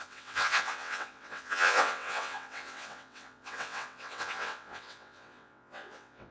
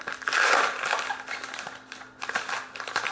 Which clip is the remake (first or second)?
first